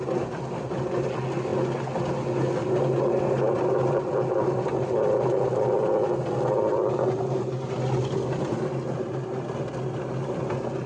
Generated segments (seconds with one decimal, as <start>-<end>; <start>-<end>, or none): none